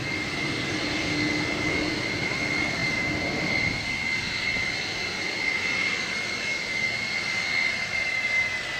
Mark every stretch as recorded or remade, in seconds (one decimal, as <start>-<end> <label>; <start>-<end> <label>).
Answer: 0.0-2.8 recorded; 2.8-3.4 remade; 3.4-8.8 recorded